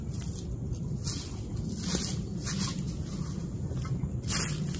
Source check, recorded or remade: recorded